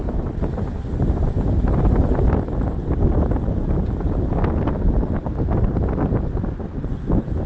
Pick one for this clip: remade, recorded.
recorded